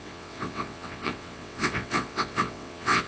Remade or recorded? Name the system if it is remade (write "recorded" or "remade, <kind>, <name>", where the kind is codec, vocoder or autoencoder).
remade, vocoder, WaveNeXt